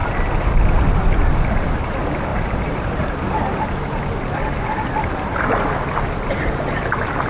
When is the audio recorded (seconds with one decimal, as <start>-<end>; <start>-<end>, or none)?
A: 0.0-2.3; 3.1-7.3